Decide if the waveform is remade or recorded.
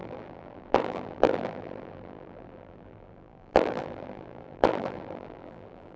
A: remade